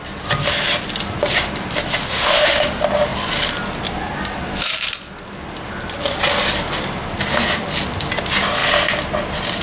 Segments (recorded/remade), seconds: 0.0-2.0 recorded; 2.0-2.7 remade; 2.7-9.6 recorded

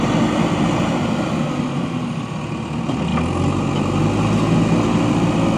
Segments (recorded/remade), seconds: 0.0-5.6 recorded